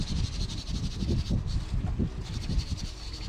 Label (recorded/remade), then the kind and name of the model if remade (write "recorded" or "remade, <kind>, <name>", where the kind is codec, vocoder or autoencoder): recorded